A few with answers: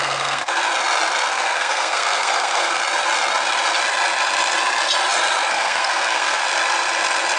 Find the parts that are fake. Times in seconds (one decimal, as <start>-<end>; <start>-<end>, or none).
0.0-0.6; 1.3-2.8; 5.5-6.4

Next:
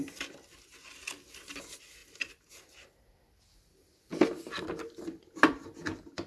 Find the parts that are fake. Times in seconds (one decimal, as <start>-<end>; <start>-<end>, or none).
none

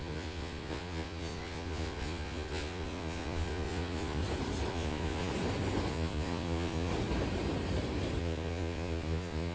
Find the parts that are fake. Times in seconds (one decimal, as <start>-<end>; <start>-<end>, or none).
0.0-4.2; 4.7-5.3; 5.9-6.9; 8.2-9.5

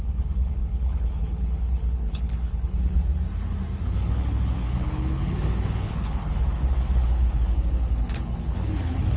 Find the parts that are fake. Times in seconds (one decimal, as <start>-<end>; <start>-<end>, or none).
0.0-3.0; 3.8-9.2

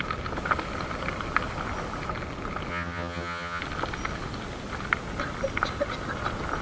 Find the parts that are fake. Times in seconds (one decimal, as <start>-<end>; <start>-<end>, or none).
2.7-3.6

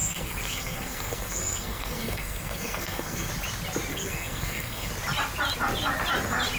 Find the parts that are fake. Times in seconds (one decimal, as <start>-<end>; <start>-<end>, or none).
0.0-3.3; 3.9-4.9

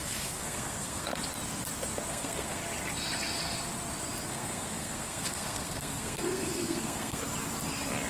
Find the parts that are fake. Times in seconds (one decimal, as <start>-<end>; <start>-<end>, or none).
0.0-1.1; 2.1-2.6; 4.3-7.2

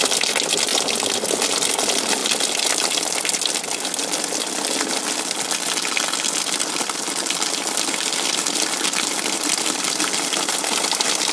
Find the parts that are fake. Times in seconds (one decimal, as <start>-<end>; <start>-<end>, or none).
none